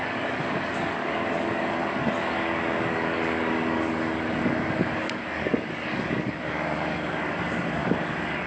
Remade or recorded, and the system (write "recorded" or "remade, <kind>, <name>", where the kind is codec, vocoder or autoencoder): remade, codec, DAC